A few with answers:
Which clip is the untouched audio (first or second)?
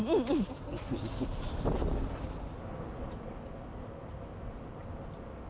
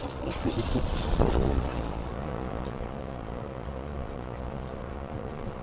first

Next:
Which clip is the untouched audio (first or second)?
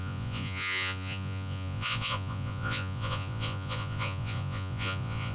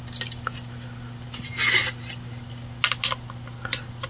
second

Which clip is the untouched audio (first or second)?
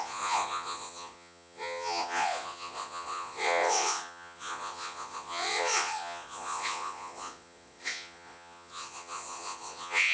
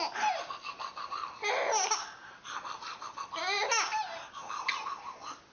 second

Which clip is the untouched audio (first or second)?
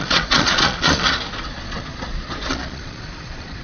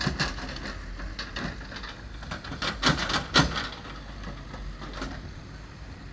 second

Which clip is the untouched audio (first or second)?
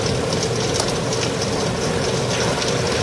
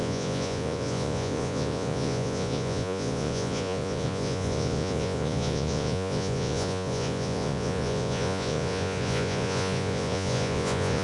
first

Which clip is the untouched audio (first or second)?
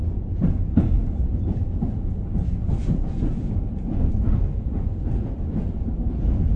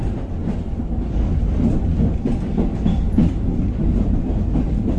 second